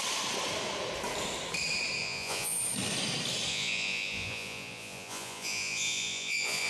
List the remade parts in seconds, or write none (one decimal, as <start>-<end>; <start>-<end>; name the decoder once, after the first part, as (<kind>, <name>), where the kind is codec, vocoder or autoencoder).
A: 2.0-2.6 (vocoder, Vocos); 3.5-6.7